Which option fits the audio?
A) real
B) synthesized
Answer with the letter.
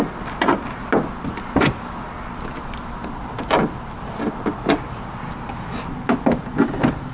A